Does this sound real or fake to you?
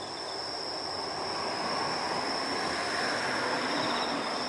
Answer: real